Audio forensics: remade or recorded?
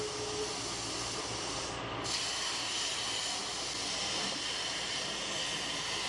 recorded